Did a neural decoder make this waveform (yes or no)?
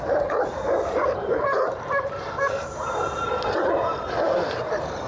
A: yes